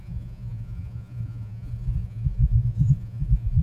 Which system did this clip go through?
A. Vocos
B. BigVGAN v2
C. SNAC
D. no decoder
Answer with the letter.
A